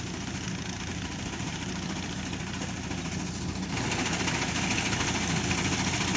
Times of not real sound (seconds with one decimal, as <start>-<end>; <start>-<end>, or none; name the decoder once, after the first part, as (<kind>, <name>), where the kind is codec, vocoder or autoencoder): 0.9-1.7 (vocoder, BigVGAN v2)